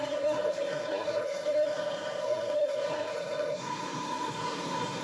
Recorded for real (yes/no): no